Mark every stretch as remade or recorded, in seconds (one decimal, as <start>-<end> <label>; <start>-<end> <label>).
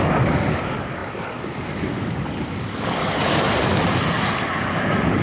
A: 0.0-3.0 remade; 3.0-4.6 recorded; 4.6-5.2 remade